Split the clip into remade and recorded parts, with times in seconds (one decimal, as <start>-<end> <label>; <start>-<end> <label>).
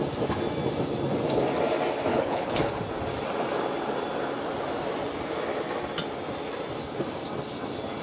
0.0-2.1 recorded; 2.1-2.7 remade; 2.7-8.0 recorded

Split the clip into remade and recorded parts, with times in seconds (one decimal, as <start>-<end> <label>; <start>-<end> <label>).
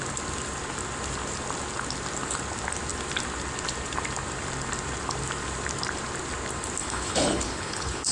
0.0-6.8 recorded; 6.8-8.1 remade